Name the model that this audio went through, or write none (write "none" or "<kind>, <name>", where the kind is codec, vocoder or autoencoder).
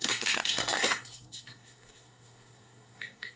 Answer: codec, SNAC